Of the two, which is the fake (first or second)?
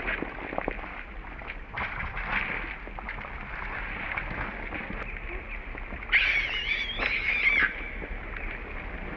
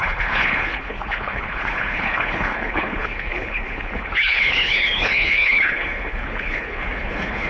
second